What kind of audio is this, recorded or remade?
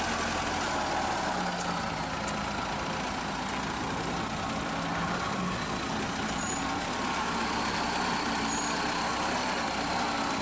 recorded